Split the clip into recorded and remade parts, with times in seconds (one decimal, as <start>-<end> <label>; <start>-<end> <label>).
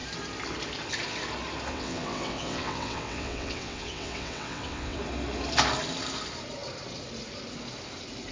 0.0-1.7 recorded; 1.7-5.0 remade; 5.0-8.3 recorded